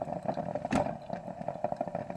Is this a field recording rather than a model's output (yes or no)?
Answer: yes